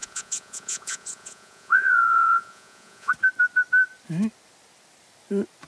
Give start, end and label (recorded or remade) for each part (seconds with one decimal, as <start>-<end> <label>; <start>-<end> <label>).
0.0-3.1 remade; 3.1-5.7 recorded